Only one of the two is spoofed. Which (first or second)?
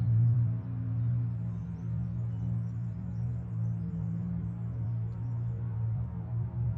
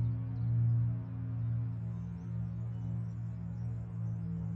first